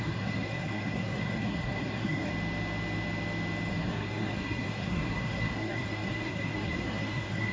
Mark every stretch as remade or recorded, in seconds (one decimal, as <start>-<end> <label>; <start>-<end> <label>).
0.0-2.3 remade; 2.3-3.7 recorded; 3.7-7.5 remade